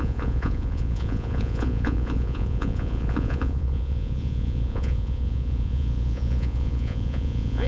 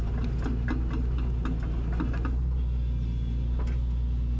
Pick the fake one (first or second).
first